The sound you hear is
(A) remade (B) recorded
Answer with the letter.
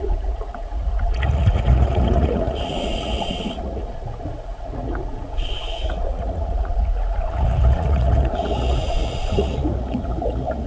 A